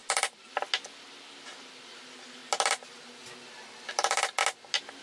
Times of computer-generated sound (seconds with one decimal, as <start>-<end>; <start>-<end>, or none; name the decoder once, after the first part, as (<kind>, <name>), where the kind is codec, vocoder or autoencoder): none